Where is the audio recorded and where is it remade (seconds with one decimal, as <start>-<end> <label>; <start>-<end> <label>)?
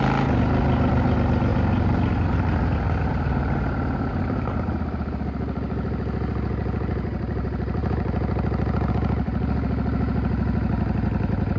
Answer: 0.0-11.6 recorded